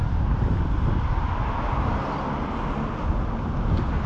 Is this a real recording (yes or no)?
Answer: yes